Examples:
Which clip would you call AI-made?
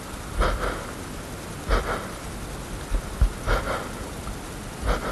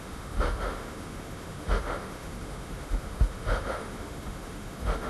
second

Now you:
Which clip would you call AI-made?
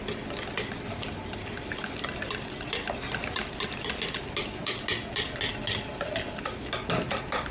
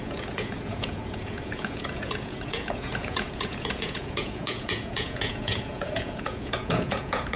second